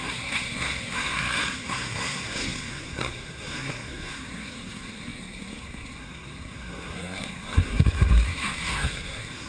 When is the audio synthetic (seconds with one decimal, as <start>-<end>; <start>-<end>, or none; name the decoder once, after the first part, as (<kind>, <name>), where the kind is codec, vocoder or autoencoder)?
0.0-9.5 (codec, SNAC)